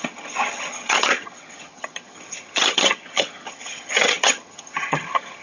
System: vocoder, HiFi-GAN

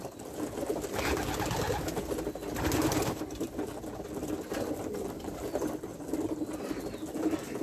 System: none